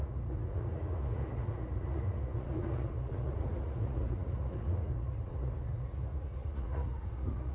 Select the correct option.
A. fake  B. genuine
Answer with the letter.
A